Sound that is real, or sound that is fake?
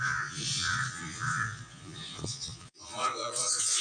fake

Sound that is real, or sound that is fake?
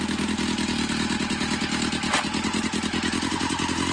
real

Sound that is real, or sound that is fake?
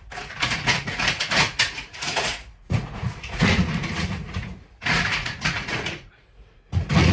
fake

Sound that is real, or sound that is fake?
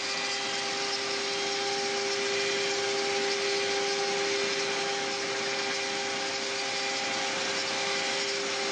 real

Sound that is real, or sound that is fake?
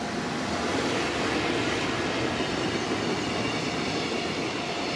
real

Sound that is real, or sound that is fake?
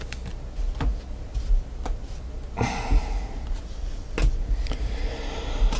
real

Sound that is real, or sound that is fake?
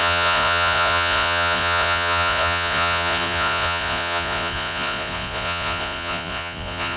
fake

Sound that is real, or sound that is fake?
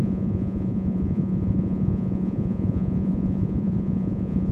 fake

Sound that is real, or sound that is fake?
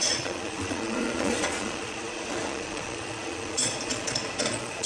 fake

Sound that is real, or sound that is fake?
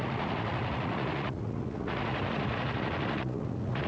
fake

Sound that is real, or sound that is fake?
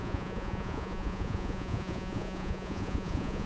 fake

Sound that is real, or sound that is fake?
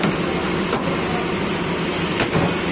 real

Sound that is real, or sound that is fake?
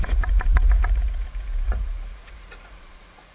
fake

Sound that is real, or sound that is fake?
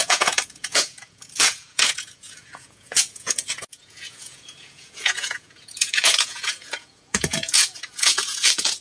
fake